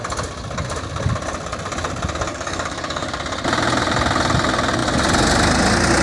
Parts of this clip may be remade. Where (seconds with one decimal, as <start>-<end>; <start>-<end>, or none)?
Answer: 2.3-3.1